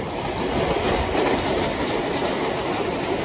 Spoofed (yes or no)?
no